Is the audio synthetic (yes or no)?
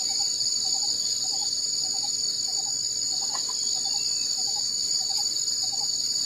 no